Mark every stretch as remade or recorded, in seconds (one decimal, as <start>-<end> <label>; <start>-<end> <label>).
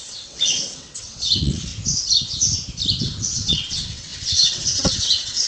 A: 0.0-1.7 remade; 1.7-3.0 recorded; 3.0-5.5 remade